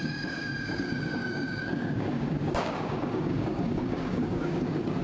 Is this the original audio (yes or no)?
no